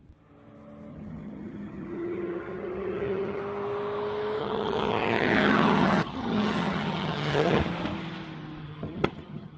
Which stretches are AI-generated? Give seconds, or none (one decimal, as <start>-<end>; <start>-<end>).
0.9-3.4; 4.4-7.6; 8.6-9.6